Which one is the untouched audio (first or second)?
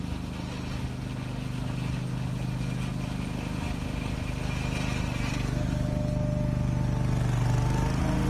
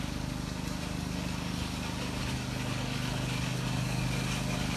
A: first